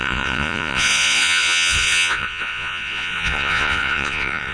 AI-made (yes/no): yes